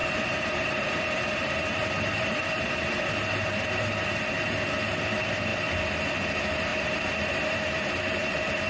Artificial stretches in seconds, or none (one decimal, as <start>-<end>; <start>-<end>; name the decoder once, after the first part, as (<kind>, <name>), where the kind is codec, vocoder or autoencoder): 0.0-5.5 (vocoder, BigVGAN v2); 6.1-6.7; 8.2-8.7

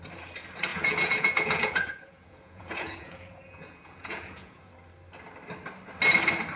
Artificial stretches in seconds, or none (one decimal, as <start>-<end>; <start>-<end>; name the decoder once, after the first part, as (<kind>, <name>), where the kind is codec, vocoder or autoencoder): 0.7-4.7 (vocoder, Vocos)

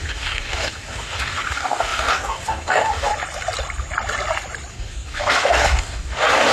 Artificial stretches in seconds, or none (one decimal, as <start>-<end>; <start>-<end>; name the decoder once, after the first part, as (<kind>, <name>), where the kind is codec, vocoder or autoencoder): 0.0-3.1 (codec, DAC); 4.7-6.5

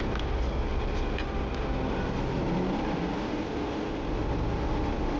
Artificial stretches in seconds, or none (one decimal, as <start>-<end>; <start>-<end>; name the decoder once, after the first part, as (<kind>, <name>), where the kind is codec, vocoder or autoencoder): none

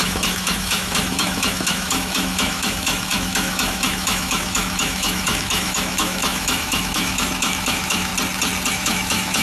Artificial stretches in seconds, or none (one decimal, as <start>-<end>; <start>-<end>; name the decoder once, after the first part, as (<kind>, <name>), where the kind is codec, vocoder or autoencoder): 0.0-8.1 (autoencoder, DAC-VAE); 8.7-9.4

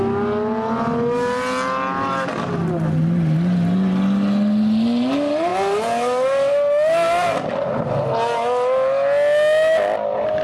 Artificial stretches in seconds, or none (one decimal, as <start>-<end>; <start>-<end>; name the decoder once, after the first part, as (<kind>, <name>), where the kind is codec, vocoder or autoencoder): none